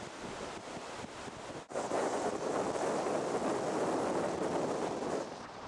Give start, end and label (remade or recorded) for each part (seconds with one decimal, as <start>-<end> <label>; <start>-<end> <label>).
0.0-1.7 recorded; 1.7-2.3 remade; 2.3-5.7 recorded

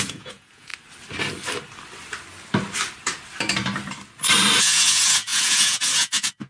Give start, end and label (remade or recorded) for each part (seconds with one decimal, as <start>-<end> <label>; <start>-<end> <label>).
0.0-0.7 remade; 0.7-4.6 recorded; 4.6-6.5 remade

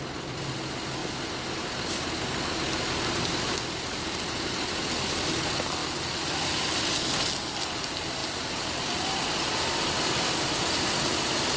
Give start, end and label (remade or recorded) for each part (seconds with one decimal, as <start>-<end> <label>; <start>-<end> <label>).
0.0-11.6 recorded

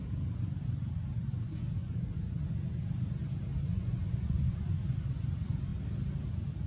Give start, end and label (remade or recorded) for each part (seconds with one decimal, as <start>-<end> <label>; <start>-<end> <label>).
0.0-1.8 recorded; 1.8-2.4 remade; 2.4-3.5 recorded; 3.5-4.7 remade; 4.7-6.7 recorded

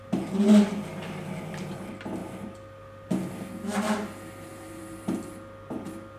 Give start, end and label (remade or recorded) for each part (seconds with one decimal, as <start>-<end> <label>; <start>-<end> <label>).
0.0-6.2 recorded